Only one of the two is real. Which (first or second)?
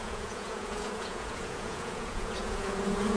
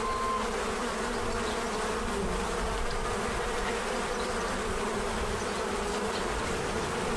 second